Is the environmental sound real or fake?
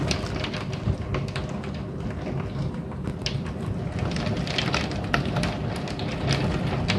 real